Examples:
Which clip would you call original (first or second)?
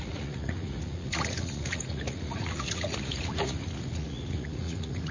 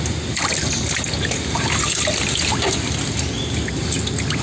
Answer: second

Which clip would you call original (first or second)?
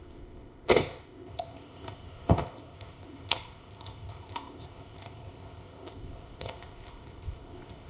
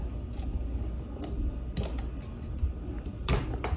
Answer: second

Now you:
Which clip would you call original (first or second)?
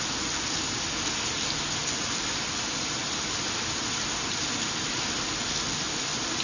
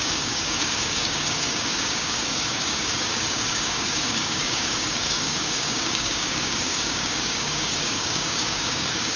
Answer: first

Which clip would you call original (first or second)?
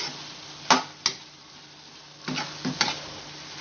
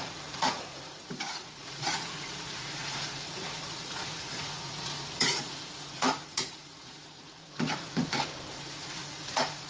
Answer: first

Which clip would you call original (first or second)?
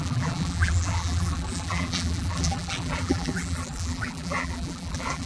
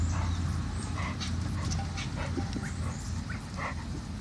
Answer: second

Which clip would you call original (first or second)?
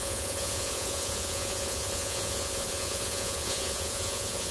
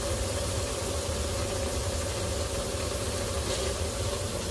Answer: second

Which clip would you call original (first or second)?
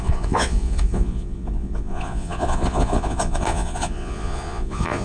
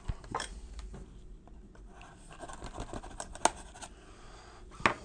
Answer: second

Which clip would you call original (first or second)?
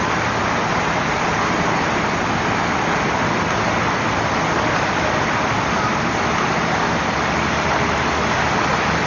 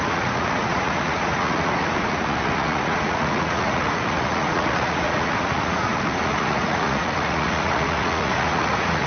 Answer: first